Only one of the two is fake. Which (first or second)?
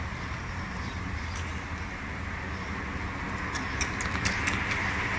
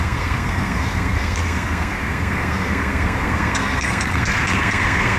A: second